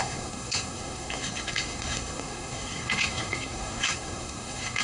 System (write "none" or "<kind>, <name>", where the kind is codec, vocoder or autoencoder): codec, SNAC